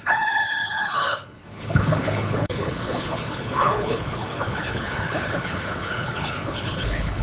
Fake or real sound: fake